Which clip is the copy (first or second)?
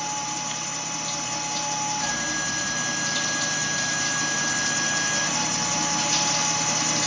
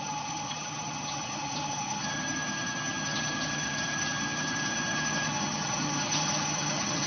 second